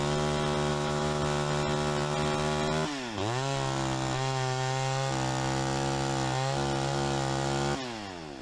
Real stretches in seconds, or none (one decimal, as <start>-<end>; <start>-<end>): 0.0-0.7; 1.2-8.4